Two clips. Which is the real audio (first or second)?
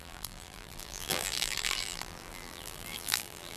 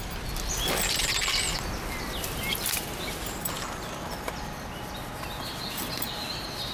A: second